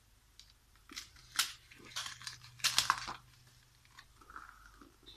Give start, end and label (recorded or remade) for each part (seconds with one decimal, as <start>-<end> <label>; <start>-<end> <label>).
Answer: 0.0-5.2 recorded

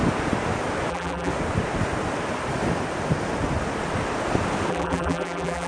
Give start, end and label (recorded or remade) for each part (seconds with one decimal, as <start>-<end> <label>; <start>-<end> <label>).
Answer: 0.0-0.9 recorded; 0.9-1.3 remade; 1.3-4.7 recorded; 4.7-5.7 remade